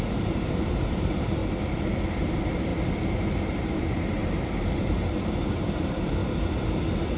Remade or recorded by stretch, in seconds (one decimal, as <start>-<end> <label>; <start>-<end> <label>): 0.0-1.4 remade; 1.4-2.1 recorded; 2.1-2.7 remade; 2.7-3.4 recorded; 3.4-6.2 remade; 6.2-7.2 recorded